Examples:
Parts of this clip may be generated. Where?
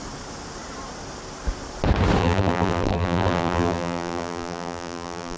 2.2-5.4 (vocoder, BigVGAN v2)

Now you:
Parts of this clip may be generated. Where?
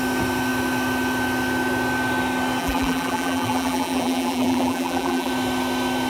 2.6-5.3 (vocoder, BigVGAN v2)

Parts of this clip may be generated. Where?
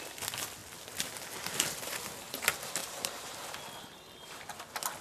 2.8-3.3 (vocoder, BigVGAN v2)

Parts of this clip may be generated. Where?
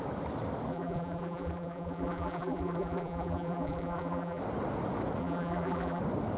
0.7-4.4 (vocoder, BigVGAN v2); 5.2-6.0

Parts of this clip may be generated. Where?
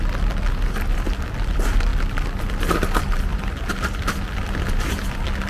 none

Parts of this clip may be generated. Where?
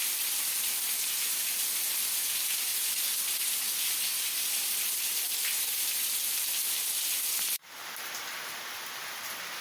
none